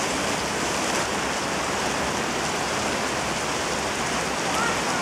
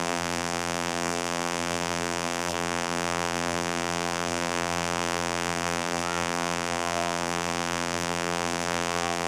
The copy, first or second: second